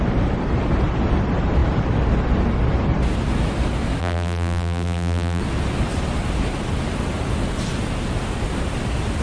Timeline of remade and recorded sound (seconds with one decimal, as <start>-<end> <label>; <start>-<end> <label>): 0.0-4.0 recorded; 4.0-5.4 remade; 5.4-9.2 recorded